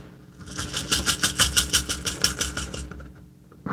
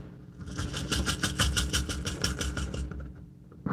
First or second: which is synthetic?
second